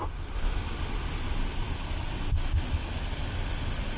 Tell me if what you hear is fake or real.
real